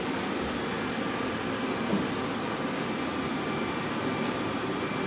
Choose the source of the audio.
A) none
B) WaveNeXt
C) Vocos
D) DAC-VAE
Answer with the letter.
A